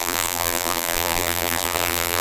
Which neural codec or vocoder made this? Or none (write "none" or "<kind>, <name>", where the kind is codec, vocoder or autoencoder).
vocoder, BigVGAN v2